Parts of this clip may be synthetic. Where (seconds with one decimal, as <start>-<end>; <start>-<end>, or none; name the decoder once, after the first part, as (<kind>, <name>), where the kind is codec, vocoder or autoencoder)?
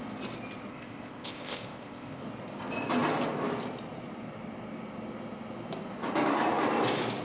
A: 0.7-2.2 (codec, ZipCodec)